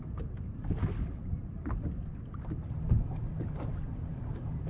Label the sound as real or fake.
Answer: real